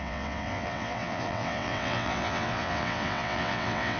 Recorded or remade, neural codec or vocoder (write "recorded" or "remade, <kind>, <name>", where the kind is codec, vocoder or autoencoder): remade, vocoder, WaveNeXt